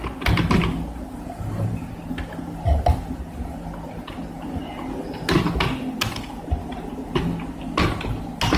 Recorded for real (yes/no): yes